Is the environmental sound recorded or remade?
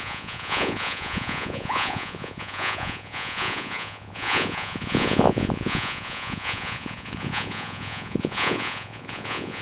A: remade